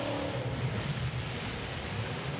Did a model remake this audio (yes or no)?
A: no